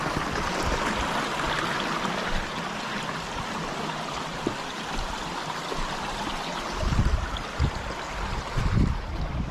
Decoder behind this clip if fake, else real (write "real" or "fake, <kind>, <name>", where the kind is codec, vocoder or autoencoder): real